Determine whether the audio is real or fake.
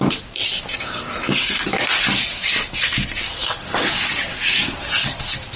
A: real